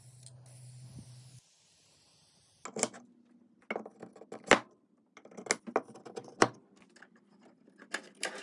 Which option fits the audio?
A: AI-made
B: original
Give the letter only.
B